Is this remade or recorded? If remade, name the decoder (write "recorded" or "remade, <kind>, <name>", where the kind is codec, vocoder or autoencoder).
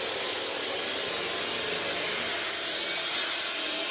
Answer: recorded